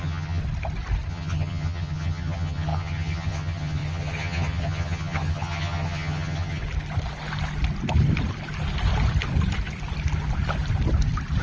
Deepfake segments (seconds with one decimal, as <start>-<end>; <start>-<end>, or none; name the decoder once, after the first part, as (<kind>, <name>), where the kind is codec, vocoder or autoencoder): 0.0-0.4 (vocoder, HiFi-GAN); 1.1-6.6